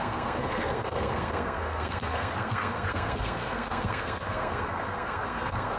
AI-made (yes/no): yes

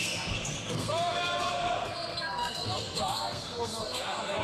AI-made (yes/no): yes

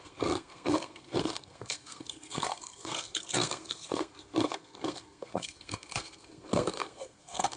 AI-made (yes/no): yes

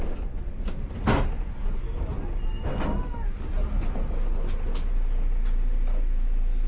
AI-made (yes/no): no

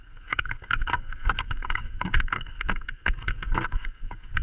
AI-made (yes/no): yes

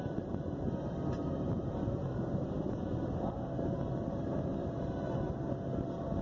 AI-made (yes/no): no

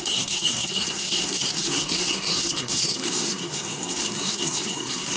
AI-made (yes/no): yes